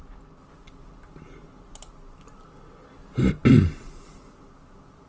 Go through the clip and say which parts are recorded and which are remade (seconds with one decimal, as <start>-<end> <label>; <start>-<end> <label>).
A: 0.0-5.1 recorded